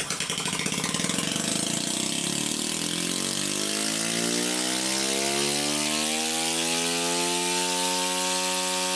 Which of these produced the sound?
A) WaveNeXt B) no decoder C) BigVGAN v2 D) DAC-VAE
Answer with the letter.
B